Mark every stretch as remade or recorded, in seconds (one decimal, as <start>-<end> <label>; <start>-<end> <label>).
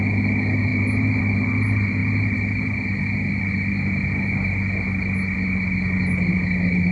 0.0-6.9 recorded